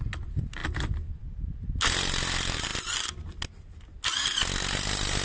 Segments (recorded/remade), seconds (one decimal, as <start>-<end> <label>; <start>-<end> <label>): 0.0-5.2 recorded